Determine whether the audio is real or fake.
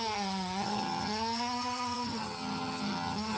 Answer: fake